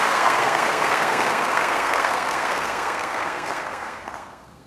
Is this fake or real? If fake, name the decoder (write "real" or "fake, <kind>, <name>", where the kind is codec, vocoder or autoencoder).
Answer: fake, codec, SNAC